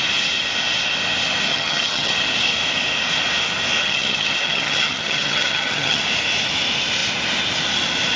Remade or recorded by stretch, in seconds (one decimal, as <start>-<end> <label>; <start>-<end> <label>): 0.0-1.5 recorded; 1.5-2.1 remade; 2.1-3.8 recorded; 3.8-6.0 remade; 6.0-8.2 recorded